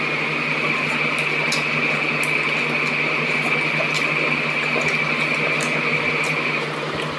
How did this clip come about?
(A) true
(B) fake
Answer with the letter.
A